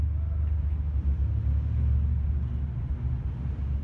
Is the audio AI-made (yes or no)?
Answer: no